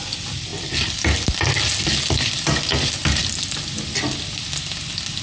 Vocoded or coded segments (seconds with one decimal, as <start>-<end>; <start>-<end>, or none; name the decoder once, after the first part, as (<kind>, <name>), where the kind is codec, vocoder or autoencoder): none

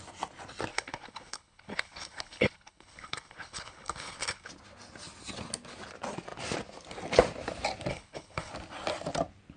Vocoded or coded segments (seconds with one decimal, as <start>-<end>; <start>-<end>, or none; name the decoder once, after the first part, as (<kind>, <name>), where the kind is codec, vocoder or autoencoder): 0.7-4.5 (codec, HILCodec); 7.9-8.5

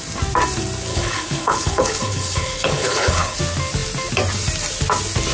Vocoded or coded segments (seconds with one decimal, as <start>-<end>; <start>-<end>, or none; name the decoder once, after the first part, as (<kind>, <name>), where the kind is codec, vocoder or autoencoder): 0.9-3.4 (codec, HILCodec)

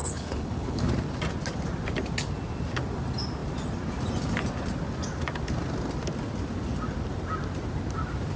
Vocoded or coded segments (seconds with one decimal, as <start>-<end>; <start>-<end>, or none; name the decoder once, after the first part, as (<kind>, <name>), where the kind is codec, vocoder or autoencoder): 0.0-0.9 (codec, HILCodec)

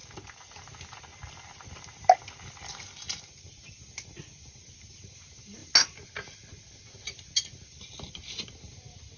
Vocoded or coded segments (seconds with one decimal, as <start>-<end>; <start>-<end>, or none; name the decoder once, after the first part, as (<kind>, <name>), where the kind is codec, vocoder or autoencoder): none

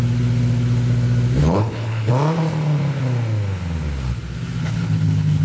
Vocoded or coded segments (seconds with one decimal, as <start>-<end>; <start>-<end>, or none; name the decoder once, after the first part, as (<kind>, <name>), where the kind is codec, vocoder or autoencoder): 1.4-2.1 (codec, HILCodec); 4.6-5.4